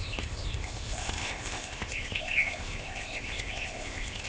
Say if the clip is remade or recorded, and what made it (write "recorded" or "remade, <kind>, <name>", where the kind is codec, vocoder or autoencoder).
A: remade, codec, ZipCodec